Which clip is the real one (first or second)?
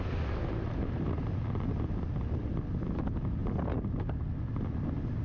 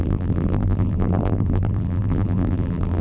first